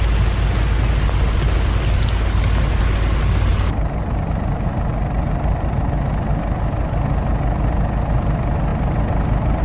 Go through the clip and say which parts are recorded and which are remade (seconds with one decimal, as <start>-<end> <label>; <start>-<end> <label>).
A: 0.0-3.5 recorded; 3.5-5.8 remade; 5.8-9.6 recorded